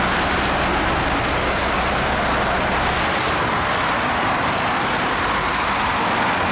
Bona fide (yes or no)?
yes